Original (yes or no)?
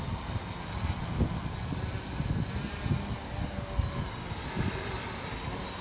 yes